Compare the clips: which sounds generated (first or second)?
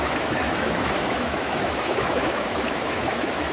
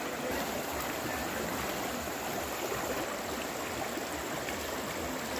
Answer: first